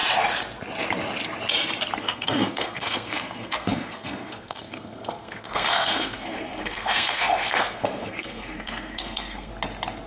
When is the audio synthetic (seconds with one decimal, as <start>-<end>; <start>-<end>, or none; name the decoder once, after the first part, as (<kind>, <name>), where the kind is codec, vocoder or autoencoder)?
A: 2.0-9.5 (codec, SNAC)